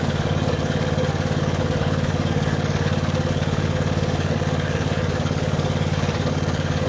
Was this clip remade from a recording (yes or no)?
yes